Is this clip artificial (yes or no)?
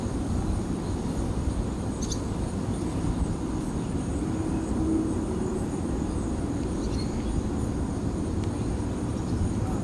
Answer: no